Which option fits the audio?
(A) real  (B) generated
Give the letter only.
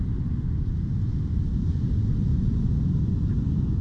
A